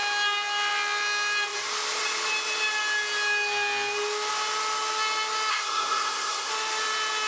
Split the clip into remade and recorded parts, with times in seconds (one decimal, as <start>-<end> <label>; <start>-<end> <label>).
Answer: 0.0-5.5 recorded; 5.5-6.5 remade; 6.5-7.3 recorded